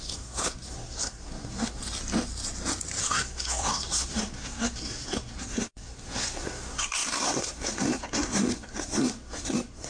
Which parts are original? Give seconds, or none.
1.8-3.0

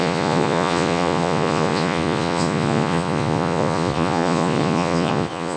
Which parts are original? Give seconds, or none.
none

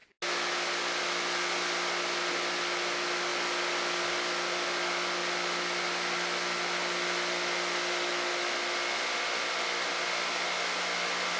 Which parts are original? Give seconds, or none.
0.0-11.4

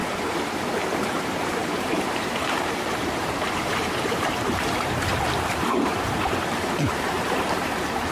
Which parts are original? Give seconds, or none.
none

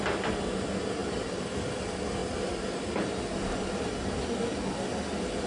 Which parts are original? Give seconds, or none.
0.0-5.5

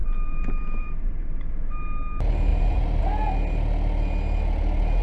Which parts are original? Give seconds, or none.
1.5-2.5; 3.0-5.0